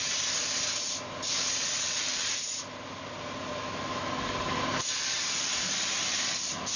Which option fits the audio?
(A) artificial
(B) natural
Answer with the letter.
B